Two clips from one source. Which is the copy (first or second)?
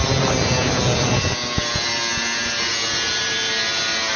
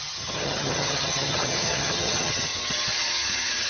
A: second